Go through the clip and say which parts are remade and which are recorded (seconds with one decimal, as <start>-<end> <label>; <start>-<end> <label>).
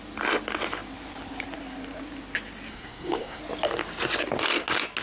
0.0-2.7 recorded; 2.7-3.4 remade; 3.4-5.0 recorded